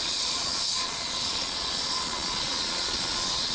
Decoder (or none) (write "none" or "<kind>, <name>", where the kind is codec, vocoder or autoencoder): vocoder, Vocos